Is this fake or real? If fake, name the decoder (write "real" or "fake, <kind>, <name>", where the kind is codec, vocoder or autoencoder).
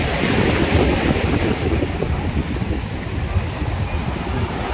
fake, vocoder, BigVGAN v2